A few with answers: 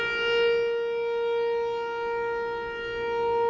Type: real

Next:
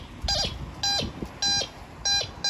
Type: real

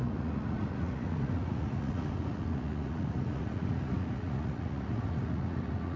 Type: fake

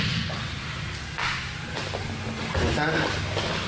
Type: real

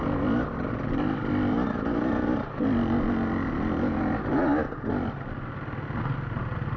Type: real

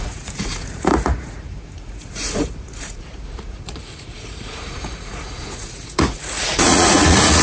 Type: fake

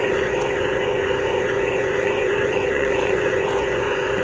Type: fake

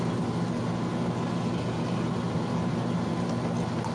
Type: real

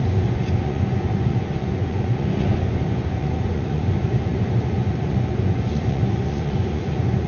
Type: fake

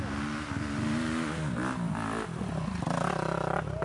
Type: real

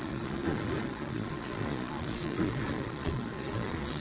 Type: fake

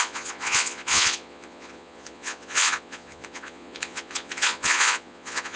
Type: fake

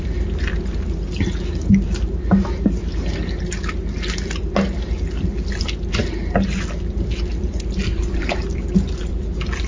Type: real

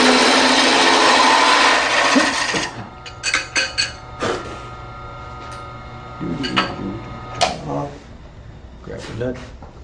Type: real